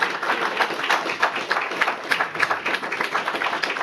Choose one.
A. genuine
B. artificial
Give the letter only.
A